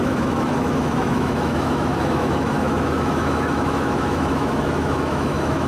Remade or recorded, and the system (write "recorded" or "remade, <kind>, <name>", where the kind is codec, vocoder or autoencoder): remade, autoencoder, DAC-VAE